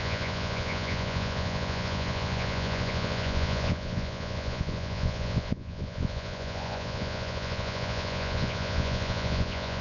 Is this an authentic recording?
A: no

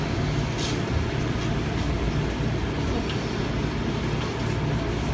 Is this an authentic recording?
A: yes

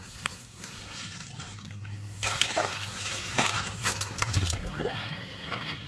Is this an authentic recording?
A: no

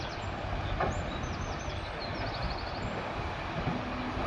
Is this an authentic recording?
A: yes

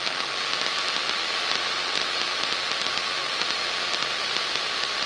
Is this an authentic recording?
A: yes